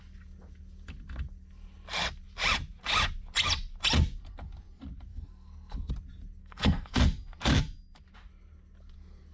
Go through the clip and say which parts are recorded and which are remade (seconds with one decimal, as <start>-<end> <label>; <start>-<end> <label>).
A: 0.0-5.1 recorded; 5.1-5.9 remade; 5.9-6.4 recorded; 6.4-7.0 remade; 7.0-9.3 recorded